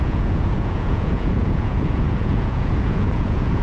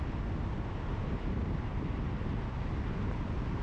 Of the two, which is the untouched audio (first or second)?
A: second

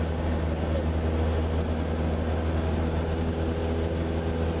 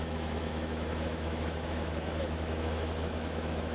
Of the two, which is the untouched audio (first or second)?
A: first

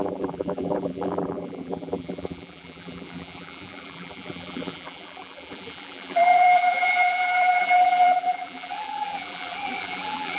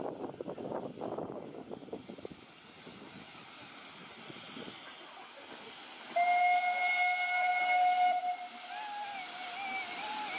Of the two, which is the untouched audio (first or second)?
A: second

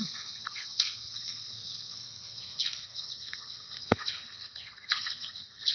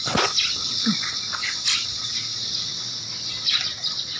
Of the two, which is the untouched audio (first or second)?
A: second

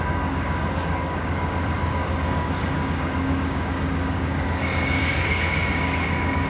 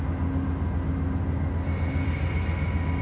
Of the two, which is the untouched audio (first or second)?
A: second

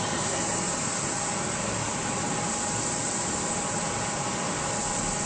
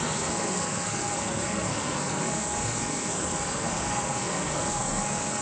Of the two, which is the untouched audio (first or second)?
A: first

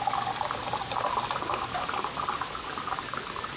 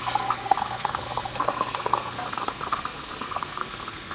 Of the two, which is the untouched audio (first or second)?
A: first